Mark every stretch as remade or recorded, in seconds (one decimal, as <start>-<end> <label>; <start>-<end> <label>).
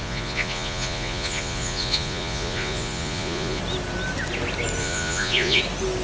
0.0-3.6 remade; 3.6-4.8 recorded; 4.8-5.6 remade; 5.6-6.0 recorded